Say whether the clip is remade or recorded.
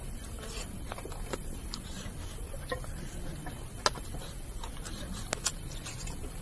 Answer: recorded